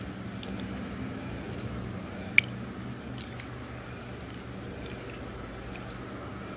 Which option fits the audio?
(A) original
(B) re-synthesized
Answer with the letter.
A